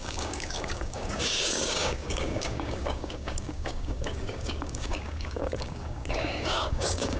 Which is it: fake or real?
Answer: fake